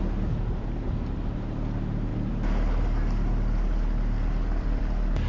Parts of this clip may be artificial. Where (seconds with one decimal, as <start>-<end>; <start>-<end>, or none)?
none